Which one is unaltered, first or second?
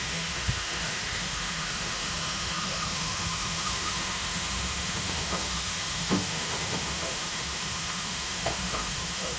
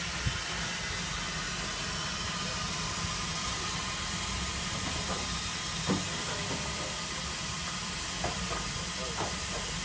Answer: second